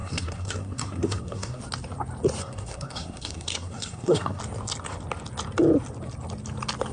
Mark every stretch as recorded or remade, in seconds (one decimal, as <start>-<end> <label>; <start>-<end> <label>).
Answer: 0.0-1.6 remade; 1.6-2.4 recorded; 2.4-4.4 remade; 4.4-6.9 recorded